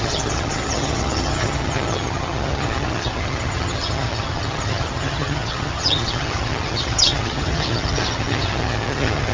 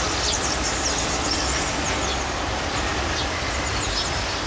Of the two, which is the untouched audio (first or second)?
second